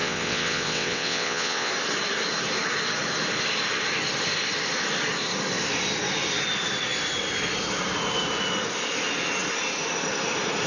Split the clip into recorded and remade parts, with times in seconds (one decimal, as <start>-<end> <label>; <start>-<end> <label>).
0.0-1.7 remade; 1.7-10.7 recorded